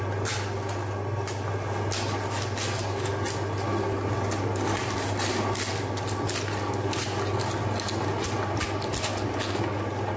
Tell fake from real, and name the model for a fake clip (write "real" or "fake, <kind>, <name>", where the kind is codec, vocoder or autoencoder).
real